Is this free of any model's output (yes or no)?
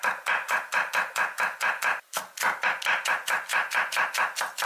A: yes